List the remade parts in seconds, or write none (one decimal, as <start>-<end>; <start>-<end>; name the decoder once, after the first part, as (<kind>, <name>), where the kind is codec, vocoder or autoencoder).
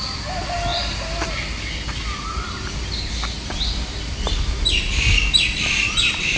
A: none